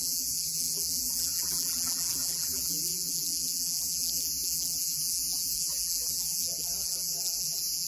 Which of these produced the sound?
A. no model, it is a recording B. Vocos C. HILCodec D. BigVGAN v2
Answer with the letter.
D